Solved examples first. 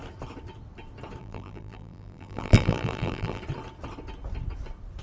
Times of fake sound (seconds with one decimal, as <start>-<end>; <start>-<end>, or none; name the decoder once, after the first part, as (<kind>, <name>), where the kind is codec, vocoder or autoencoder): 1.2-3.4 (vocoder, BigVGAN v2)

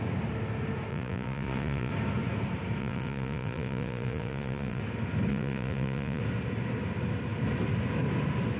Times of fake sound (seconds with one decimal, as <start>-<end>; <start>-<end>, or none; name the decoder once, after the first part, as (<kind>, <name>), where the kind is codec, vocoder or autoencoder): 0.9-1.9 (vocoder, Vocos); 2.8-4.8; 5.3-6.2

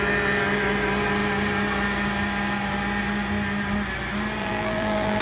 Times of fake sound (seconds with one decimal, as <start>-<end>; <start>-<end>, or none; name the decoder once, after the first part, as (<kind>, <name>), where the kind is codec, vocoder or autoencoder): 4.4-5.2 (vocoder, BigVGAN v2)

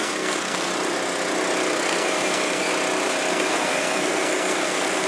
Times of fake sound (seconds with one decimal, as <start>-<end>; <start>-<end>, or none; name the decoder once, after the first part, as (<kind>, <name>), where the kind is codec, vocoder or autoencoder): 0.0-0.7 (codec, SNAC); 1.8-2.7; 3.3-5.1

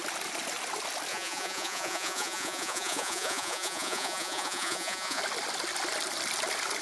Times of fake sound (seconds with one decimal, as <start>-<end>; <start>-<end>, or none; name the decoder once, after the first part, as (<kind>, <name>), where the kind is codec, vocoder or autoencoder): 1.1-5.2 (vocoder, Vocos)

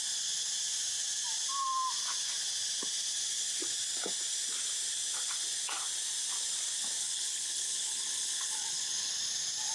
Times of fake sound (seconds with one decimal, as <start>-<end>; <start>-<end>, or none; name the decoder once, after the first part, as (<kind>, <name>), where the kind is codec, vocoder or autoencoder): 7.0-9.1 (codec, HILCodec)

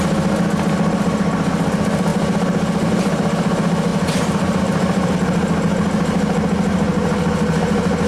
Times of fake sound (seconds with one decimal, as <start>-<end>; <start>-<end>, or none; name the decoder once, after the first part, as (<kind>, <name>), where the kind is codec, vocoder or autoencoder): 3.9-5.1 (vocoder, BigVGAN v2)